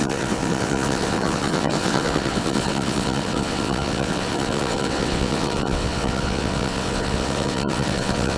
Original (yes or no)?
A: no